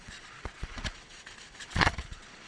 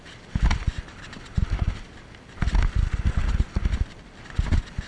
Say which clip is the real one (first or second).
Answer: second